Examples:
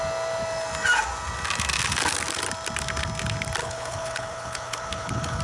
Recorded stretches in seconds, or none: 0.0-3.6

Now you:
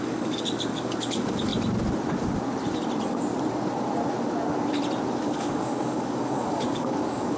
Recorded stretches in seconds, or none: 1.5-5.2

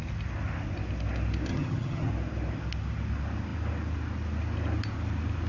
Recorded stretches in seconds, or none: 0.0-1.5; 2.1-5.5

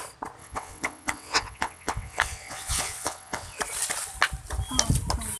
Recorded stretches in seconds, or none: 0.0-0.4; 3.6-5.4

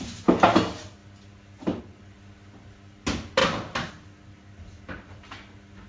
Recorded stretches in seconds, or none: 0.0-5.9